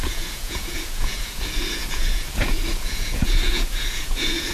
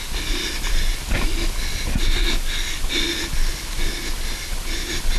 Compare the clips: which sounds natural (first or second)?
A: second